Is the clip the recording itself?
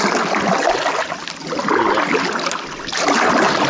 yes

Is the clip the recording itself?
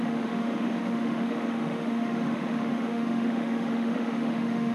no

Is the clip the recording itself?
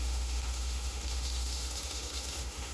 no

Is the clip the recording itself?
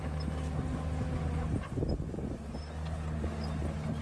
yes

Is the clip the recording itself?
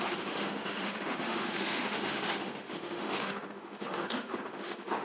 no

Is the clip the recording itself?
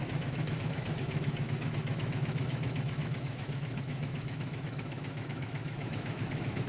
no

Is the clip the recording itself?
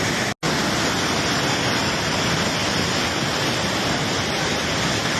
yes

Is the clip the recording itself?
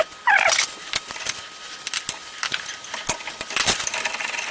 yes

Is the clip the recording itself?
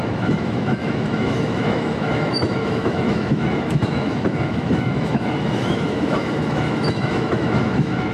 no